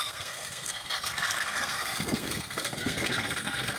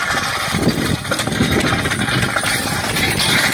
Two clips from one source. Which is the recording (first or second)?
second